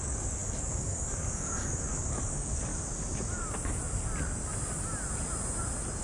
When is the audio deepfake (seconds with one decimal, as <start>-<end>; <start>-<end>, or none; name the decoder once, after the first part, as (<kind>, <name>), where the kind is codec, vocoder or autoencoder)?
0.0-2.7 (codec, DAC)